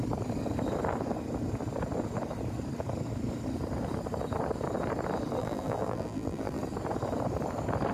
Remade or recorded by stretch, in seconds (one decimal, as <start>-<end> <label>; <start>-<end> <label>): 0.0-5.4 recorded; 5.4-6.6 remade; 6.6-7.9 recorded